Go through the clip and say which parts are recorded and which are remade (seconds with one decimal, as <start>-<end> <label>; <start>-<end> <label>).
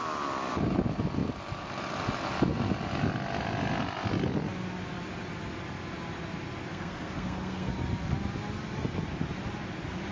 0.0-6.7 recorded; 6.7-7.7 remade; 7.7-10.1 recorded